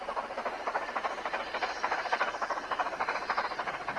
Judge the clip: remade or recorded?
remade